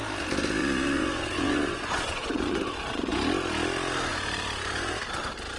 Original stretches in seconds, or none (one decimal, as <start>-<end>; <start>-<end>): 0.0-0.6; 3.1-4.1; 5.0-5.6